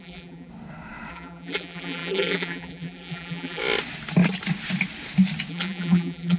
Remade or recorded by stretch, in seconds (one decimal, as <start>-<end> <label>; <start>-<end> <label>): 0.0-0.5 remade; 0.5-1.1 recorded; 1.1-3.6 remade; 3.6-5.5 recorded; 5.5-6.4 remade